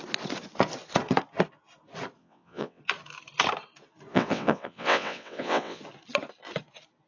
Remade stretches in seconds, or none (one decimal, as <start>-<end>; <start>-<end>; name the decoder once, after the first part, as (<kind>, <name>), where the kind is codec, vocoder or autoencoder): 2.2-2.8 (vocoder, WaveNeXt); 4.1-5.8